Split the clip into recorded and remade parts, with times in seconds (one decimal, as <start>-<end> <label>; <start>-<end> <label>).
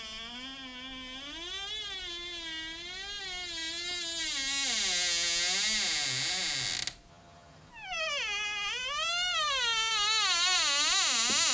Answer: 0.0-7.1 recorded; 7.1-7.7 remade; 7.7-11.5 recorded